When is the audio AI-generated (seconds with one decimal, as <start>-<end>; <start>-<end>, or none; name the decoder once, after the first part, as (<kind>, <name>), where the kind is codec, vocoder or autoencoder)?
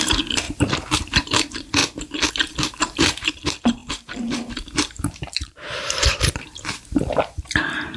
0.0-1.8 (vocoder, BigVGAN v2); 2.3-8.0